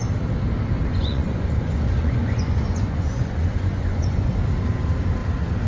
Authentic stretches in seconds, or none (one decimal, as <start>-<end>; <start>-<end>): 0.0-0.9; 4.3-5.7